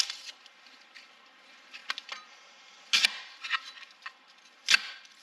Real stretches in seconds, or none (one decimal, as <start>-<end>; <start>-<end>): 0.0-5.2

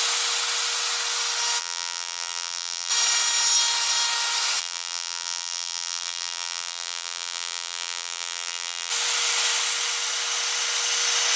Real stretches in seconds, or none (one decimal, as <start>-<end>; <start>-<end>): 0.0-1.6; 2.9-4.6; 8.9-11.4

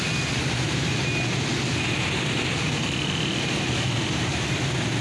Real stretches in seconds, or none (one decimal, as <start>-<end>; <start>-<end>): 0.0-5.0